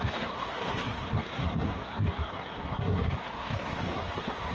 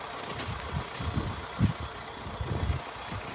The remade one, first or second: first